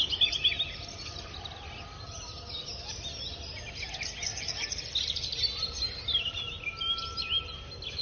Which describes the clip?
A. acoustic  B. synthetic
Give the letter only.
A